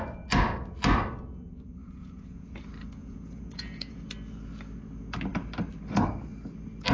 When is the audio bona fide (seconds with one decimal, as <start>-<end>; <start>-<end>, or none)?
0.0-1.8; 2.6-3.0; 4.0-6.9